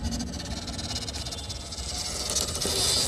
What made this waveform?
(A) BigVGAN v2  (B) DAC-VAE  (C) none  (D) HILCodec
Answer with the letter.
C